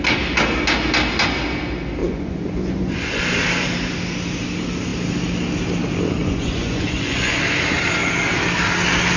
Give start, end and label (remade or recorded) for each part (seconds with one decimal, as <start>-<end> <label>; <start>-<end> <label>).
0.0-2.0 recorded; 2.0-3.2 remade; 3.2-6.2 recorded; 6.2-7.4 remade; 7.4-9.2 recorded